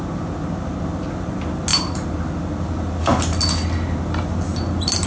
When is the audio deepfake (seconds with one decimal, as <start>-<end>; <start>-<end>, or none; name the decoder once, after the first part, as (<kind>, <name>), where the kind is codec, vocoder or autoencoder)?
none